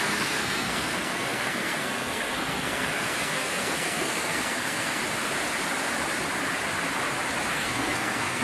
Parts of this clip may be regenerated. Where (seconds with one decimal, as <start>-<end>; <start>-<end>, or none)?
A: 0.0-5.0; 7.5-8.4